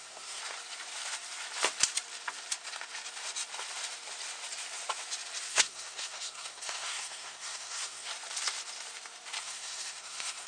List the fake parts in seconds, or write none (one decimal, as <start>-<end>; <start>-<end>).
0.0-0.4; 5.5-8.1; 9.4-10.5